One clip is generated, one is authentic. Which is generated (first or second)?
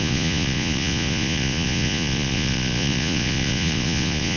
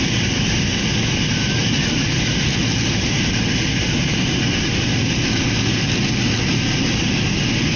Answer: first